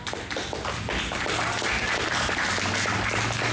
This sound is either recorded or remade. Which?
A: recorded